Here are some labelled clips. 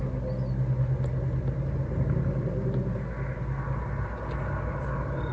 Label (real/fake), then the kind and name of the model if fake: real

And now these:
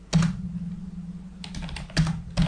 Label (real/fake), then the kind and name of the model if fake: real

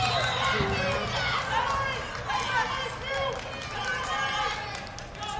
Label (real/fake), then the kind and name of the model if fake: real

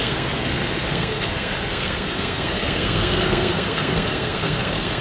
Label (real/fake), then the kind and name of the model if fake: fake, codec, SNAC